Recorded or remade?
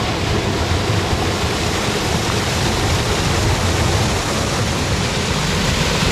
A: recorded